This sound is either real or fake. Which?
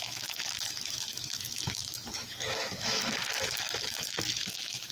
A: fake